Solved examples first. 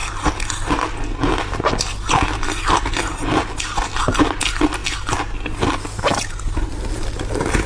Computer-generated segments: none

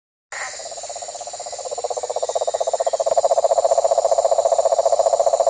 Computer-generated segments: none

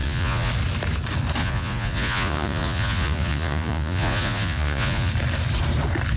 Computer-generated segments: 0.0-0.5 (vocoder, Vocos); 1.4-5.1

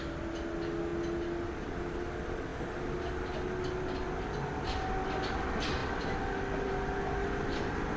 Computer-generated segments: none